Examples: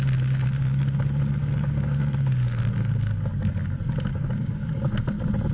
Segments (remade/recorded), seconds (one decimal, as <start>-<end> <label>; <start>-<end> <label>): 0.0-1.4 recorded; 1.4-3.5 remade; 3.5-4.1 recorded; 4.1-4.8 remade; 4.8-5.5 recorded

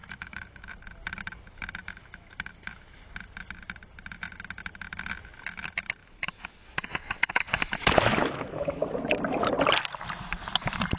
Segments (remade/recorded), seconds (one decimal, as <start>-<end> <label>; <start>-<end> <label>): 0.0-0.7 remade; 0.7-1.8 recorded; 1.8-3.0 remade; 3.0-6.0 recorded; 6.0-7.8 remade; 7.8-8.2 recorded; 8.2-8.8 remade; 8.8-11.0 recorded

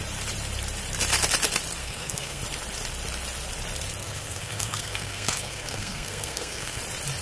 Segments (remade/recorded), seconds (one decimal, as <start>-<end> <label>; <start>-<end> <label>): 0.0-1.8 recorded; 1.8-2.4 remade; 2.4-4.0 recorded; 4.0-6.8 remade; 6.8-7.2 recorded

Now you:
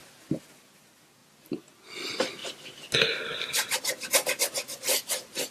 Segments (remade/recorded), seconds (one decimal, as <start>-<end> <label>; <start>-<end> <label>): 0.0-0.7 remade; 0.7-5.5 recorded

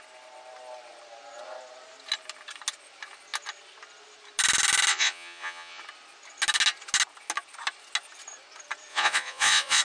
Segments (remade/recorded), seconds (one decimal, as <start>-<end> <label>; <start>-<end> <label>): 0.0-4.9 recorded; 4.9-5.8 remade; 5.8-8.9 recorded; 8.9-9.8 remade

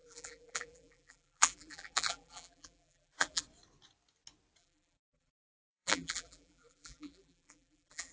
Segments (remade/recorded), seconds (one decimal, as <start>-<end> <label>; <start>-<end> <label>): 0.0-3.4 remade; 3.4-4.6 recorded; 4.6-8.1 remade